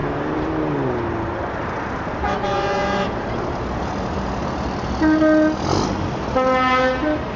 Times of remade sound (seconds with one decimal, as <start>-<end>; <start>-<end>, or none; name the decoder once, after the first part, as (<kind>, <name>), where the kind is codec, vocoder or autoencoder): 0.0-4.4 (vocoder, BigVGAN v2)